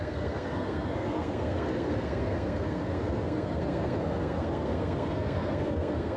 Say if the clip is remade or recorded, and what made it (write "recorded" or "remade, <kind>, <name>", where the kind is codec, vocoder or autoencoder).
remade, codec, SNAC